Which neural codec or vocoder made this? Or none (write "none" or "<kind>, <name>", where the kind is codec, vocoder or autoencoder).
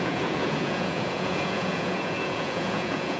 vocoder, Vocos